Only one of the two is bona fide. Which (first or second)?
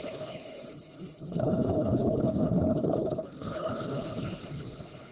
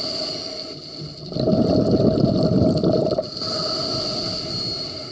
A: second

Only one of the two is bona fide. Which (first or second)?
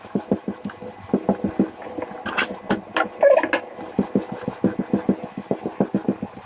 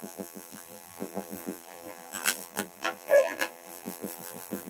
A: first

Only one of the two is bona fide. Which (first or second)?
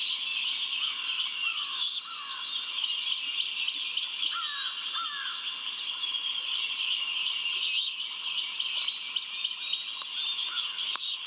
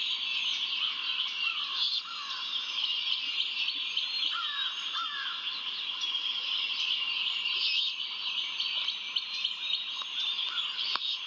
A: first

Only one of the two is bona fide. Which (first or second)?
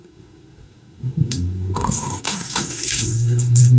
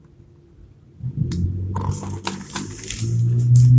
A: second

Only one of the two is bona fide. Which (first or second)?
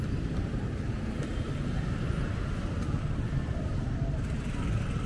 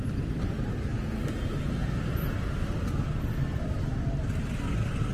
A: second